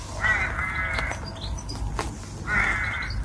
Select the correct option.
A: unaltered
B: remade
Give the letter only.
A